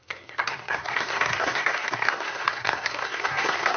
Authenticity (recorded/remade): remade